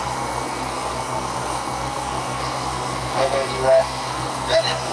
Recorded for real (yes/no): no